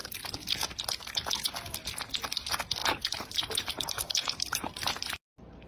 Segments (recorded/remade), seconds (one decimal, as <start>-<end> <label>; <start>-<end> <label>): 0.0-2.8 recorded; 2.8-5.1 remade; 5.1-5.7 recorded